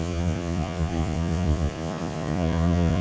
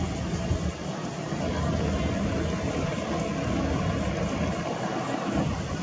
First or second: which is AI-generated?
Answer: first